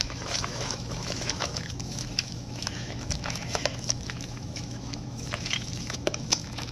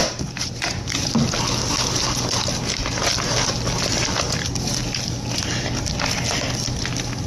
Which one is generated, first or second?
first